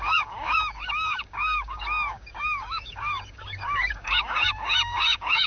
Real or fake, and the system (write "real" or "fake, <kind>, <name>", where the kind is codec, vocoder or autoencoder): fake, codec, DAC